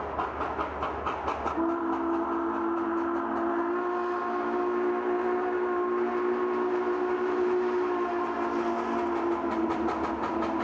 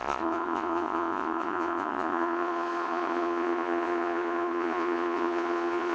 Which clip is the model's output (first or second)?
second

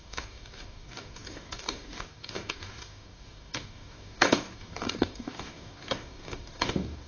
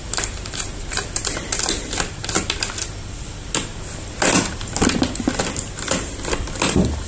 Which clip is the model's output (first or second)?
first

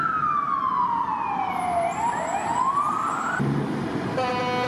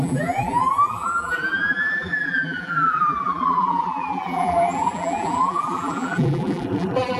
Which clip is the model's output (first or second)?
second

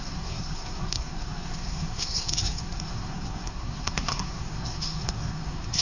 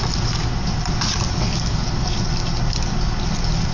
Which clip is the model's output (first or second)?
first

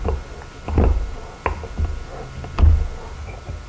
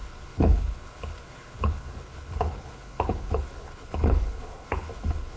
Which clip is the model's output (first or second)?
second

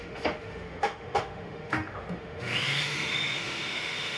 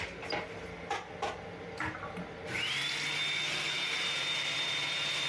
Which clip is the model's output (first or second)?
first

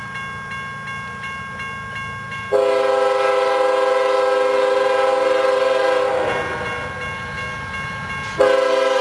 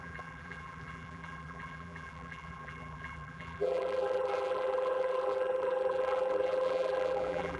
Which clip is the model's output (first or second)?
second